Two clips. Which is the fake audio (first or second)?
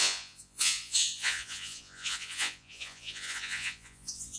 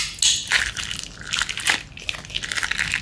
first